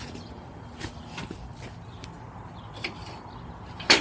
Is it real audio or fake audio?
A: real